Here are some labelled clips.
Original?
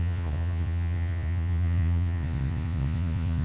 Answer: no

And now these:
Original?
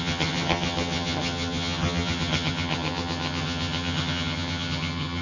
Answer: no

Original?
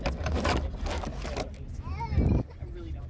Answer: yes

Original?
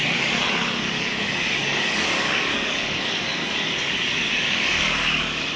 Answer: no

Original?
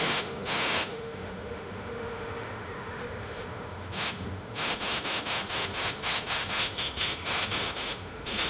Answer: no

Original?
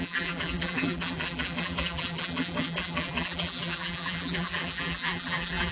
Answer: no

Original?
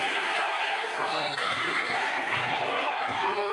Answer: no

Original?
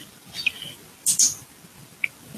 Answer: yes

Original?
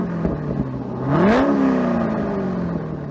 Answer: yes